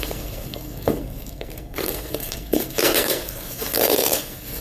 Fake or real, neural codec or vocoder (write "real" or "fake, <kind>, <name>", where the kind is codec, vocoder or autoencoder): fake, codec, SNAC